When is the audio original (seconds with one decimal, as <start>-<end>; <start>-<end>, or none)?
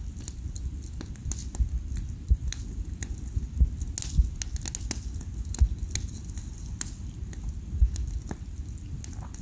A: 0.0-9.4